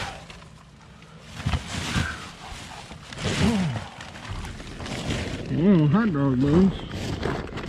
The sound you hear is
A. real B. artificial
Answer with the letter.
A